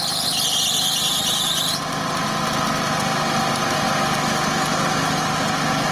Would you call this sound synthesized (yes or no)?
no